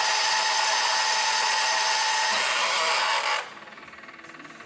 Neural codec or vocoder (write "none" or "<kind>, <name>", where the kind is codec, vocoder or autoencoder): none